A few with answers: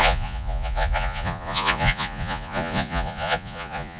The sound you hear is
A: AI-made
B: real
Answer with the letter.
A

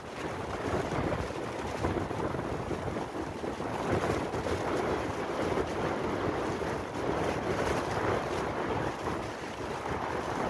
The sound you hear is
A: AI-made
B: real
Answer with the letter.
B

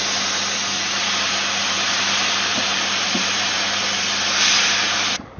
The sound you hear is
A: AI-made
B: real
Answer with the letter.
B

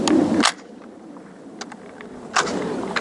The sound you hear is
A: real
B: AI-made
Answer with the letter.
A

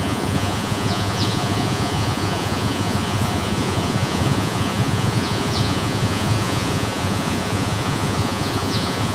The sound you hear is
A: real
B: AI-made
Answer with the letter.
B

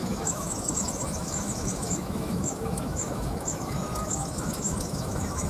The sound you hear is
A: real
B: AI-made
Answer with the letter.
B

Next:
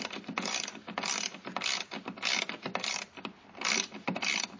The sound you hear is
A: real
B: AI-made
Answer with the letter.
A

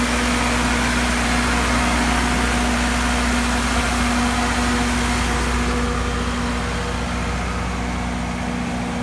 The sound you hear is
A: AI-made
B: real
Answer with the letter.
B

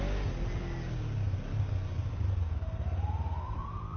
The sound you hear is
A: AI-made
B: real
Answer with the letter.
B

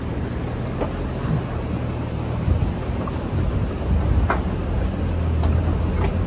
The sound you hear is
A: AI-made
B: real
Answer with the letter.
B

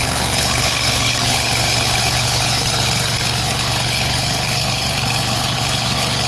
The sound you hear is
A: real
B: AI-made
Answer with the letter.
B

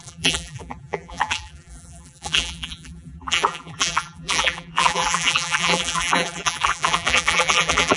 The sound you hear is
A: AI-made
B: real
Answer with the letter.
A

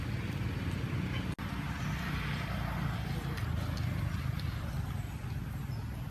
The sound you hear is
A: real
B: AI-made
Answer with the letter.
A